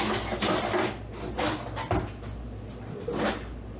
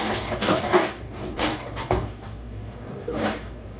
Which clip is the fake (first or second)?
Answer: second